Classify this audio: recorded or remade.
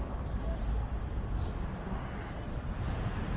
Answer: recorded